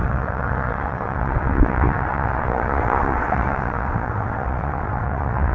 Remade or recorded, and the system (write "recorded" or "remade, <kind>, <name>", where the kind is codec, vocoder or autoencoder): remade, vocoder, WaveNeXt